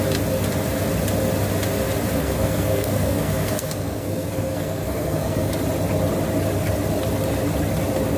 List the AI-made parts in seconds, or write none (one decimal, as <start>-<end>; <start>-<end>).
2.2-5.5